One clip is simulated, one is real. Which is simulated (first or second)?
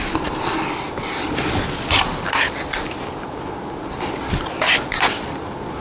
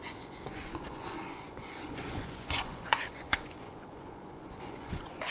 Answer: second